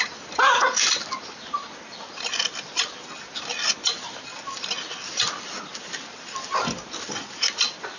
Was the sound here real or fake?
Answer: real